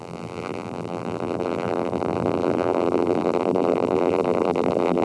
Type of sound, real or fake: fake